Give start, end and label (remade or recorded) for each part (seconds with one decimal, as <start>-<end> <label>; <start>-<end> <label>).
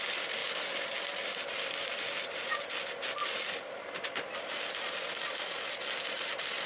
0.0-6.7 recorded